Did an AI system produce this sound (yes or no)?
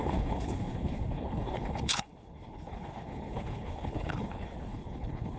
yes